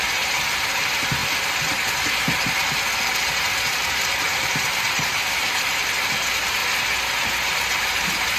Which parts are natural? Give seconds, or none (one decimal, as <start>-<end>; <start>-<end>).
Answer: 1.2-3.9; 6.6-7.3